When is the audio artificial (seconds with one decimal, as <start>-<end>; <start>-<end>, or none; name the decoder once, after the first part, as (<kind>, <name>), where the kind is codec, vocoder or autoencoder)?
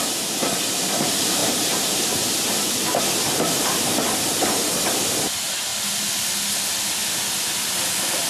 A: 1.4-2.0 (vocoder, BigVGAN v2)